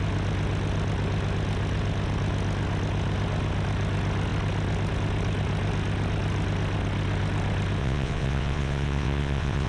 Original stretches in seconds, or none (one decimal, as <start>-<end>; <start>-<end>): 0.0-7.8